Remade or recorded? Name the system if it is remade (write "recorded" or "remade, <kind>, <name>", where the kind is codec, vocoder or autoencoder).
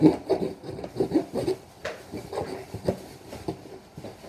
recorded